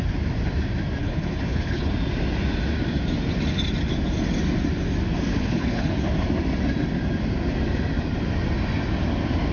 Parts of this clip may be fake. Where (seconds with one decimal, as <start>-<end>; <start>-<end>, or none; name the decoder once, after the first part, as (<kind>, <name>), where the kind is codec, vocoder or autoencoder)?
1.0-1.9 (codec, HILCodec); 5.3-5.9